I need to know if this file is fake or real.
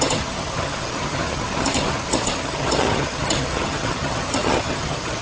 fake